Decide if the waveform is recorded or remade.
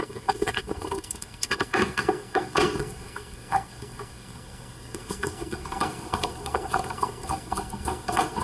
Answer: remade